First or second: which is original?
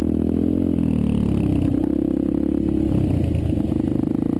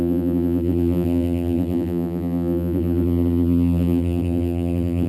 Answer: first